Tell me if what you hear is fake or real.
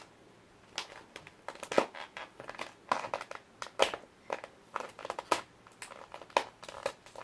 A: real